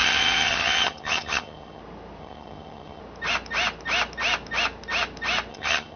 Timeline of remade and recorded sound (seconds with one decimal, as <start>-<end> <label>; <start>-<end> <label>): 0.0-1.8 remade; 1.8-2.2 recorded; 2.2-3.0 remade; 3.0-5.5 recorded; 5.5-6.0 remade